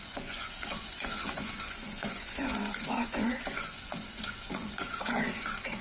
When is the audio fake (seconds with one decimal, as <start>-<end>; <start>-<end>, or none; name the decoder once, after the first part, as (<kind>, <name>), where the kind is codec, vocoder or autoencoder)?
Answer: 0.0-5.8 (vocoder, Vocos)